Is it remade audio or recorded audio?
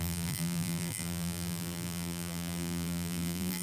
remade